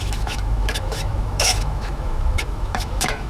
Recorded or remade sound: remade